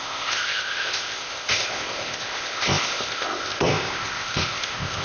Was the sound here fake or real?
fake